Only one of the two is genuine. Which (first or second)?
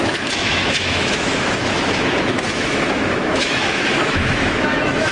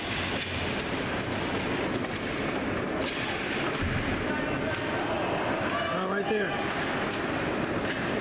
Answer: second